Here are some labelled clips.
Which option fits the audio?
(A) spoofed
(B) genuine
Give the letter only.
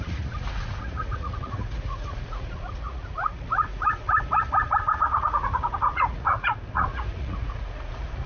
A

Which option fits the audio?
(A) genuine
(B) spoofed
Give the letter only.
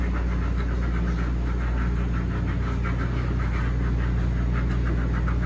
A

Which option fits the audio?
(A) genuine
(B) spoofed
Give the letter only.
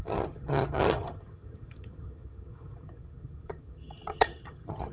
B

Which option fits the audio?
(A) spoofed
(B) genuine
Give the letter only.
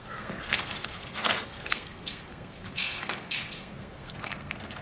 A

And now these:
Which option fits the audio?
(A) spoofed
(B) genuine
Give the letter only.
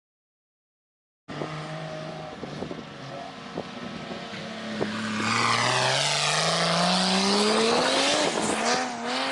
B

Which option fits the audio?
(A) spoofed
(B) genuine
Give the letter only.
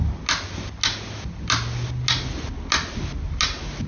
B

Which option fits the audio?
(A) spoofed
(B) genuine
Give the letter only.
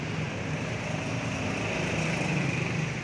A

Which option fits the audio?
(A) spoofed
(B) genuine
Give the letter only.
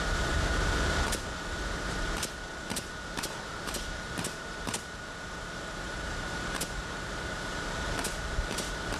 A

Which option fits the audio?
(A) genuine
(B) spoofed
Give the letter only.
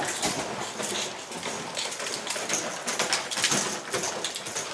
A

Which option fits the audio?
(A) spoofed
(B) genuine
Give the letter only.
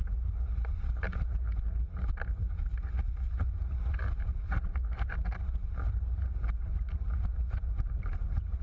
B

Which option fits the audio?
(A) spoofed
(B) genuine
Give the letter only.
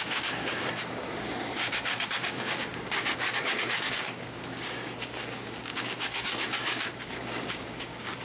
A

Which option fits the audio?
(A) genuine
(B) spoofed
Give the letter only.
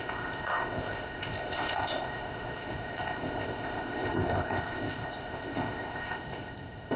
B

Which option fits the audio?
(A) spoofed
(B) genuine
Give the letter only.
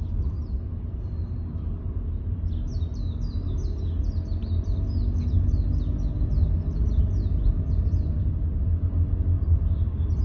B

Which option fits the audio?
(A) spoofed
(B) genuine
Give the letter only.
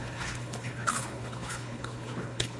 A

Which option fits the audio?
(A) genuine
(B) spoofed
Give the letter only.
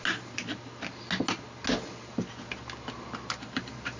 A